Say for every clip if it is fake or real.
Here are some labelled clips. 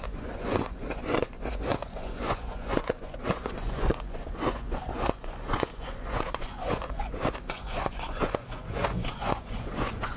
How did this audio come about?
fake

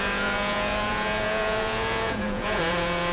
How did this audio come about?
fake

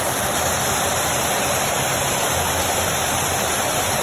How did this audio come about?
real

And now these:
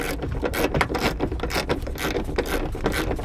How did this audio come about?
real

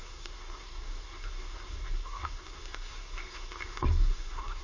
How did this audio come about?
fake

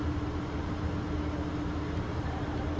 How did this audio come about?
real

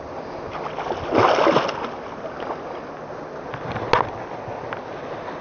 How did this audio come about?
real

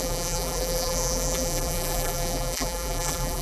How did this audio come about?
fake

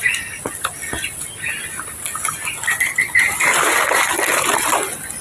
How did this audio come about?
real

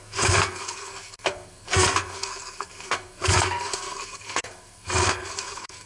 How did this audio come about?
fake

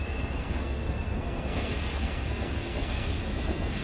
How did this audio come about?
fake